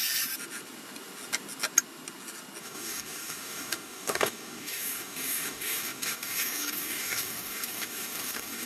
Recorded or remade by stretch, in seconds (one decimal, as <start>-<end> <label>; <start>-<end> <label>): 0.0-2.6 recorded; 2.6-8.7 remade